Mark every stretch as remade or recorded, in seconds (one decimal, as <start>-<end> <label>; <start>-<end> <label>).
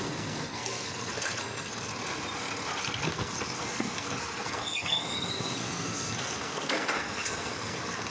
0.0-1.9 remade; 1.9-2.8 recorded; 2.8-8.1 remade